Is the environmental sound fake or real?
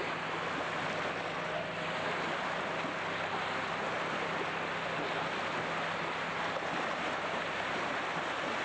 real